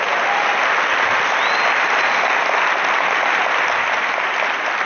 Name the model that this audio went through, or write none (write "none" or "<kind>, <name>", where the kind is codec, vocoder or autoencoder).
none